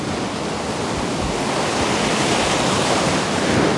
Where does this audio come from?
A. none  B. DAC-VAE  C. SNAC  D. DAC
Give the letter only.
A